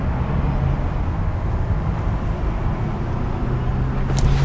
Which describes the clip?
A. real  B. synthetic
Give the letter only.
A